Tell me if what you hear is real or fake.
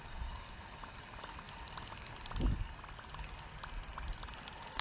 real